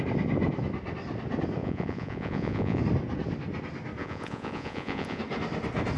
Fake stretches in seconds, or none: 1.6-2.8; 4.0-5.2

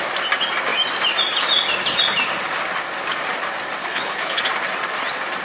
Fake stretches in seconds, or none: 3.8-4.4

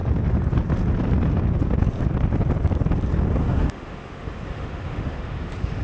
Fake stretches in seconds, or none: 3.4-5.8

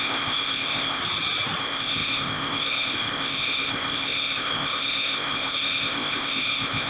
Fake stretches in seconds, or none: 0.0-1.0; 1.6-6.9

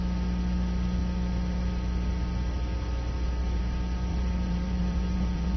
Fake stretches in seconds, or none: 4.1-5.6